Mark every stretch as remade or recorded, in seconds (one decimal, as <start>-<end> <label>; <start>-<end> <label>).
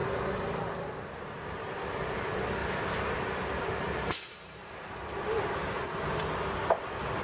0.0-1.8 remade; 1.8-2.6 recorded; 2.6-6.2 remade; 6.2-7.2 recorded